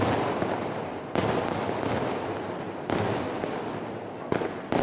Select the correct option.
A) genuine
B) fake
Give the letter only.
A